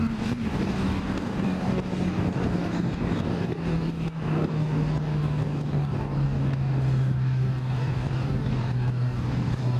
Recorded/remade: remade